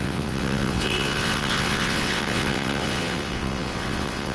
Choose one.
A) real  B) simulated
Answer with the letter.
B